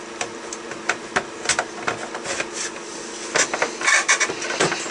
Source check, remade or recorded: recorded